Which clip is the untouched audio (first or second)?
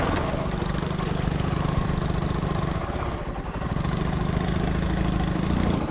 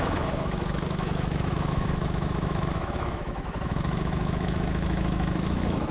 first